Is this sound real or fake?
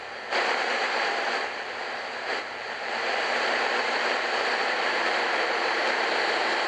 fake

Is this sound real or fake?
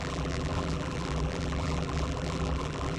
fake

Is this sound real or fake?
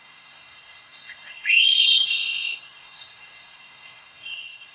fake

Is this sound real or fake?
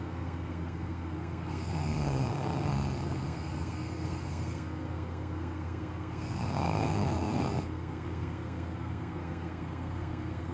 fake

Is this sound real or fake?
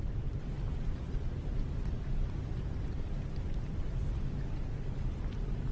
fake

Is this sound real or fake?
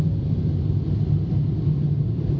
real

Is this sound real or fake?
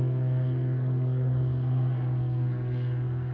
fake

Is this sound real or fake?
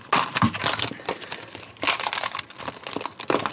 real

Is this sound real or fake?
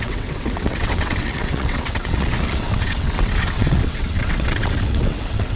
fake